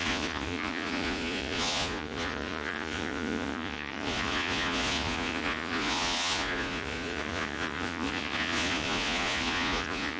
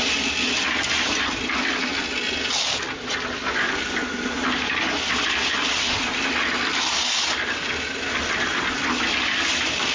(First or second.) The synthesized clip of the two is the first